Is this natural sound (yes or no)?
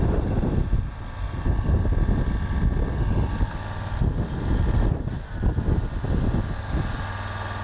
yes